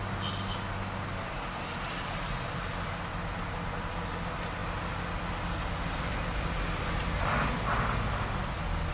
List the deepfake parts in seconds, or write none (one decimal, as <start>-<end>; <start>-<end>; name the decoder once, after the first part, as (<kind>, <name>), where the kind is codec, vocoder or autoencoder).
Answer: none